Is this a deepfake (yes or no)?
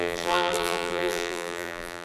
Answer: yes